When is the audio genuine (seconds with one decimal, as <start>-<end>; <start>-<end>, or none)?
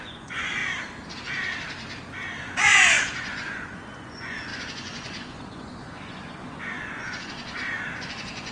0.6-2.4